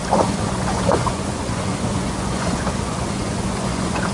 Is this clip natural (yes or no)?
no